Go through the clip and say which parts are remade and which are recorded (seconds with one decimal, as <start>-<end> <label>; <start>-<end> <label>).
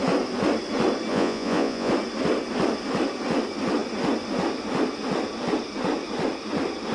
0.0-1.1 recorded; 1.1-1.9 remade; 1.9-6.9 recorded